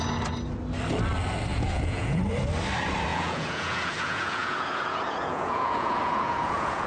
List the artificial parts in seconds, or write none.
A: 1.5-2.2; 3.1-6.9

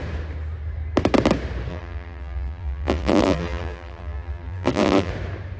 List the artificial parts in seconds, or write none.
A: 1.7-5.1

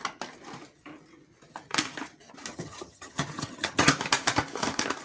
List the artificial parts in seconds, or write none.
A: 2.5-3.9

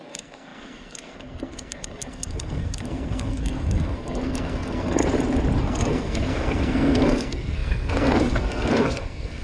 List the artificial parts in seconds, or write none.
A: 0.0-5.0; 5.6-9.4

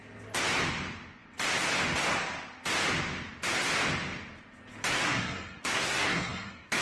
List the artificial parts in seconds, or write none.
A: 4.9-6.8

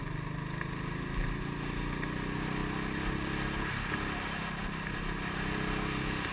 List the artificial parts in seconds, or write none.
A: none

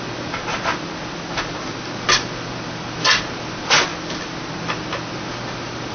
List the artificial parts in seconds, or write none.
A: none